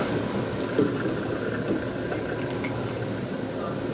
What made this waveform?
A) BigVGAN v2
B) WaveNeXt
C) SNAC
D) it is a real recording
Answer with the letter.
D